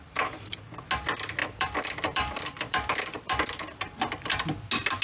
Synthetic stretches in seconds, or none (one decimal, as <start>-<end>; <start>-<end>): 1.4-3.4